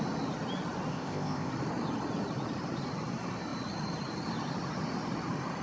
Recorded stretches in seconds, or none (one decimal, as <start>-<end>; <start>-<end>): 0.0-0.9; 1.5-5.6